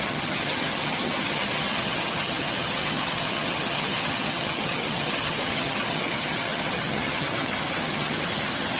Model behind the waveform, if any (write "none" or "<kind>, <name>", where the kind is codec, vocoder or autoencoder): vocoder, HiFi-GAN